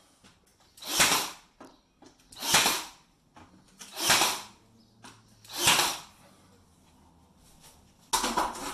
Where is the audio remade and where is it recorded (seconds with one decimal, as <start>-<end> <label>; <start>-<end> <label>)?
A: 0.0-8.7 recorded